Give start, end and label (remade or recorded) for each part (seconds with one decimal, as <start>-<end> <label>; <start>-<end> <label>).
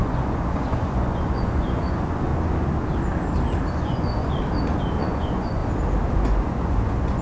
0.0-2.3 remade; 2.3-3.7 recorded; 3.7-4.4 remade; 4.4-5.0 recorded; 5.0-5.6 remade; 5.6-6.1 recorded; 6.1-7.2 remade